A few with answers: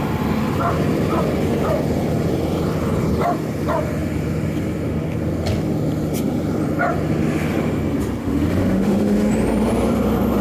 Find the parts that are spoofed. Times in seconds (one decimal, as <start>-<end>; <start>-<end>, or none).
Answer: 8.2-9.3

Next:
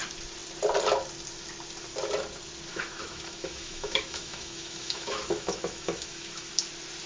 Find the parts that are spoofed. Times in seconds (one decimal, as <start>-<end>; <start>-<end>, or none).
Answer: 2.7-6.5

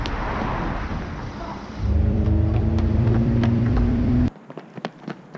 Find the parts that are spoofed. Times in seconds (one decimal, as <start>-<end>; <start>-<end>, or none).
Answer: 1.7-4.9

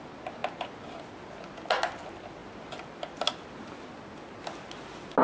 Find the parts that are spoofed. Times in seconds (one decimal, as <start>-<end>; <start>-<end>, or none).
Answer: none

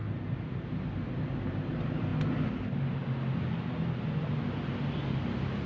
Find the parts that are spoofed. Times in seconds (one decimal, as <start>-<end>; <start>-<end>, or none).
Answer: none

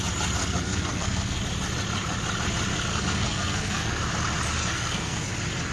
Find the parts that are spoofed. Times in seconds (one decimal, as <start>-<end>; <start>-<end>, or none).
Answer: 0.4-1.4; 2.9-4.0; 4.6-5.3

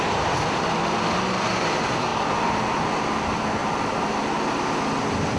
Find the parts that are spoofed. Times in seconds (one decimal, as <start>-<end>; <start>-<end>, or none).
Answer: 3.6-4.2

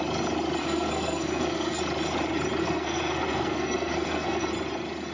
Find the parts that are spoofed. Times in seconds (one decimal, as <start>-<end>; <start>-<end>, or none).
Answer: 0.6-1.8; 2.6-4.5